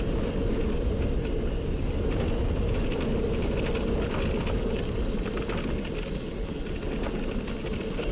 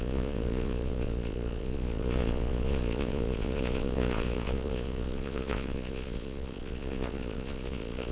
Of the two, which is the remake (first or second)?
second